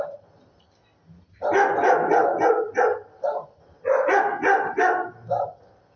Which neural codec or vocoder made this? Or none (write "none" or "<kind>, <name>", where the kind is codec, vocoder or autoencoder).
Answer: none